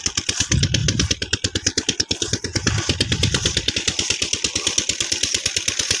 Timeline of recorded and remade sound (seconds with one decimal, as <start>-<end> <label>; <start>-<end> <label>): 0.0-6.0 recorded